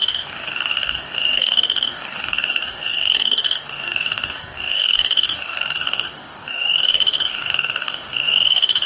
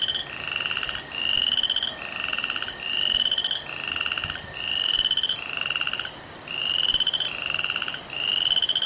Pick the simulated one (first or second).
first